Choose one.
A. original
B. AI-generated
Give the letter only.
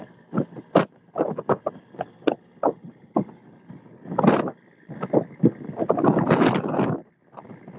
A